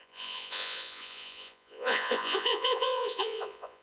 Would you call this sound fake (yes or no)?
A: yes